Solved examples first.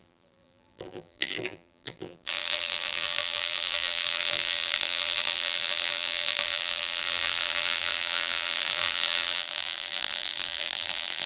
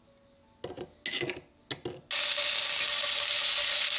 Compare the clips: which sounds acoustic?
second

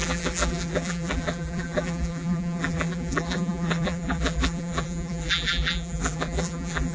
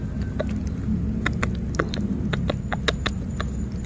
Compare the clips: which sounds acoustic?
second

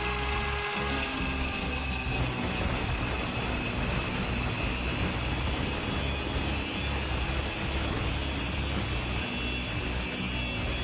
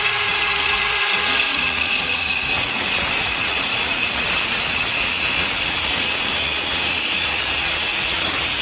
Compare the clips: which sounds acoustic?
first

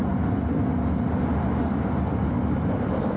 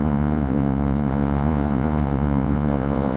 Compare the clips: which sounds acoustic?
first